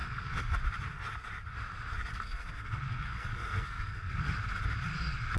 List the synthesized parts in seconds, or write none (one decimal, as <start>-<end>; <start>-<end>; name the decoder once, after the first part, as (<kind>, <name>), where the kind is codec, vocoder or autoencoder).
0.0-0.6 (codec, SNAC); 2.1-4.3